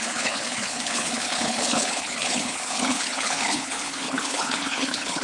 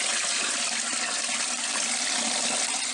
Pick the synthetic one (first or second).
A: first